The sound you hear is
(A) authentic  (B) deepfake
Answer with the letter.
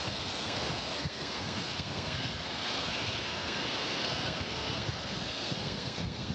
B